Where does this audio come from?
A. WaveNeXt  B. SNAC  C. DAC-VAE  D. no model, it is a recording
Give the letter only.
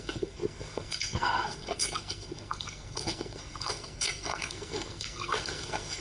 B